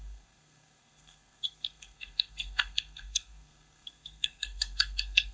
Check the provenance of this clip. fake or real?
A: fake